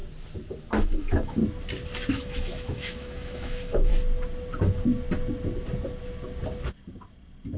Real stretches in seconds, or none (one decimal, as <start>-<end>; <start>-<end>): 0.0-0.8; 1.4-2.1; 3.9-7.6